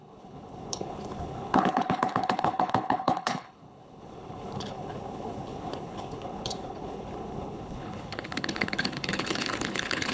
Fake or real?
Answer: fake